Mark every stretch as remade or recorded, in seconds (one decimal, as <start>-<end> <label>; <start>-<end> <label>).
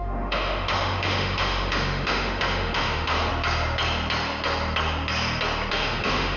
0.0-3.3 remade; 3.3-5.7 recorded; 5.7-6.4 remade